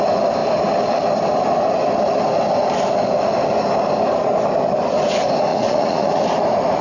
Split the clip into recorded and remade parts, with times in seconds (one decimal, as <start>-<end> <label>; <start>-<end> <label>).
0.0-5.5 recorded; 5.5-6.2 remade; 6.2-6.8 recorded